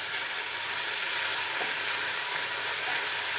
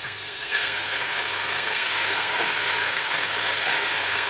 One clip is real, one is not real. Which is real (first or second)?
first